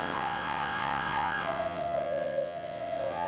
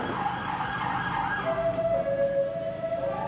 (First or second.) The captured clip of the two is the second